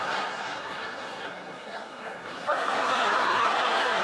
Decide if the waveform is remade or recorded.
remade